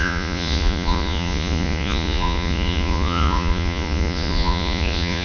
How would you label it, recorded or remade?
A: remade